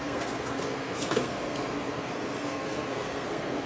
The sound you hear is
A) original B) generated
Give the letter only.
B